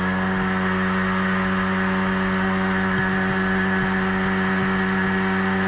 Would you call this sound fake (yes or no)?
no